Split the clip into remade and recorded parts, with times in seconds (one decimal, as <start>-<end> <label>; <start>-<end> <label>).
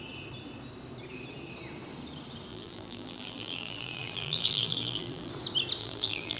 0.0-2.5 recorded; 2.5-5.3 remade; 5.3-5.8 recorded; 5.8-6.4 remade